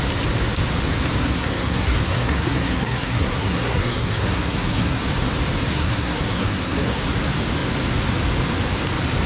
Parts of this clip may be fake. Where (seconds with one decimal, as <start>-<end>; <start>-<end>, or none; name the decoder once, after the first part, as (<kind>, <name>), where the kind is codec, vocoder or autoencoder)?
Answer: 1.2-5.0 (codec, SNAC); 5.7-7.0